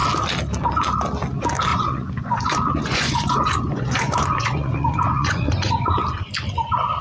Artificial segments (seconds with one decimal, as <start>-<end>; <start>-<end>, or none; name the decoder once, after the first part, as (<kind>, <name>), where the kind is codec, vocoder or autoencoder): 1.7-5.9 (vocoder, Vocos)